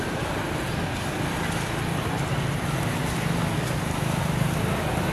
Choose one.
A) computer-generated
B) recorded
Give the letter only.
B